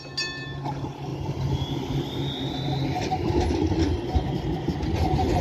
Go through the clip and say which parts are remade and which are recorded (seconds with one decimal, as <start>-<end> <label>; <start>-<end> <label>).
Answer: 0.0-5.4 recorded